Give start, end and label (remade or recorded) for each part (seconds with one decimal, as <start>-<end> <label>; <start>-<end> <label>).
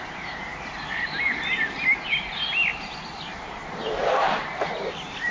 0.0-0.5 remade; 0.5-3.4 recorded; 3.4-5.3 remade